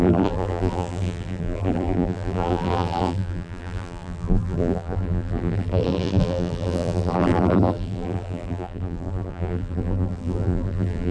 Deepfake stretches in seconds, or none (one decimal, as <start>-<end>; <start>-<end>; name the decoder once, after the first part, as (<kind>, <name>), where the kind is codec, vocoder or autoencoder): 0.0-11.1 (vocoder, BigVGAN v2)